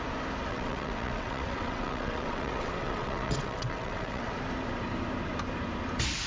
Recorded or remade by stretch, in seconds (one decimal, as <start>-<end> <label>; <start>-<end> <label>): 0.0-0.5 recorded; 0.5-4.3 remade; 4.3-6.3 recorded